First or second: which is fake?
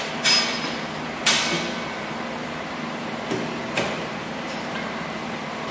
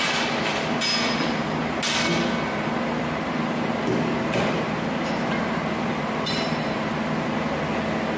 first